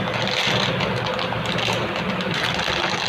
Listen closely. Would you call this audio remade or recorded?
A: recorded